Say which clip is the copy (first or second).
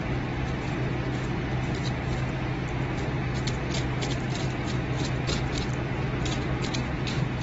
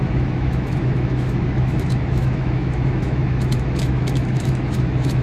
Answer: second